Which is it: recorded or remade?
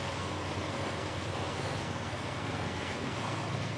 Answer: remade